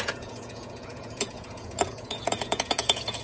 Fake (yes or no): yes